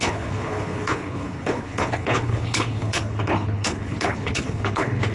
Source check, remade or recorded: remade